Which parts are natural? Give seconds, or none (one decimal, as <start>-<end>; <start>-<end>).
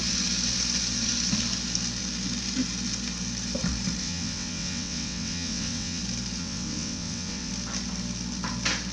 0.0-4.0; 6.0-6.4; 7.5-8.9